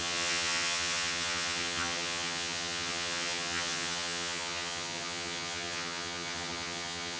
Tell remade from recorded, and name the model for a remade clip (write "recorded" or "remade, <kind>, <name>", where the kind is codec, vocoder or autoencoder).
remade, vocoder, HiFi-GAN